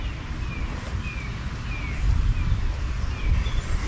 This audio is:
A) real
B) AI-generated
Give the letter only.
A